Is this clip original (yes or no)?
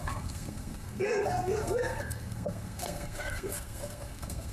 no